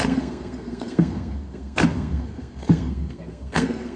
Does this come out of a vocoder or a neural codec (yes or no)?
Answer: yes